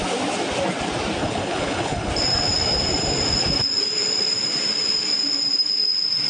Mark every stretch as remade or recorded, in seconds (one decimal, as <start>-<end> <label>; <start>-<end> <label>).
0.0-1.2 recorded; 1.2-2.1 remade; 2.1-6.3 recorded